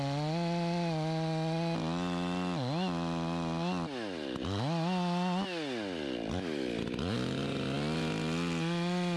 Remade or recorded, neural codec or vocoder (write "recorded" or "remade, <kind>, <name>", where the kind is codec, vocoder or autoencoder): recorded